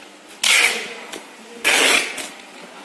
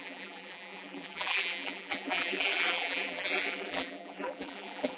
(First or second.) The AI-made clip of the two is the second